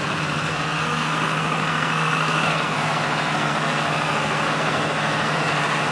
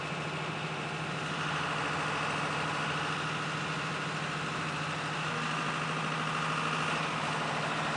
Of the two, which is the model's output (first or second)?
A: first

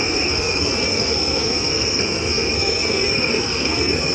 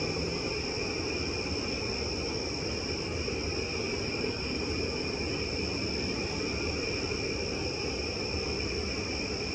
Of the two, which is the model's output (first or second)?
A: first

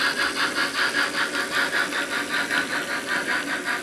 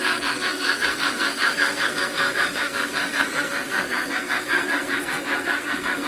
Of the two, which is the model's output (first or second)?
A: second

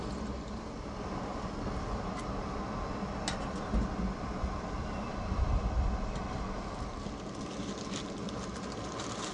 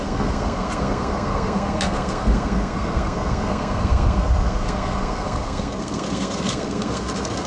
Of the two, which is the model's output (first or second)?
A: second